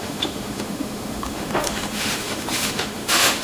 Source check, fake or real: fake